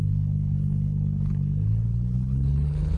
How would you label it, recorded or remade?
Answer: remade